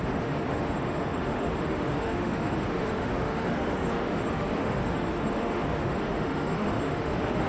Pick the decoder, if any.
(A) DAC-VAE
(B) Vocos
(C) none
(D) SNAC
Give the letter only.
A